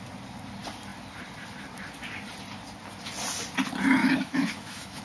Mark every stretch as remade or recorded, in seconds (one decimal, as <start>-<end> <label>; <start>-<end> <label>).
0.0-4.0 recorded; 4.0-5.0 remade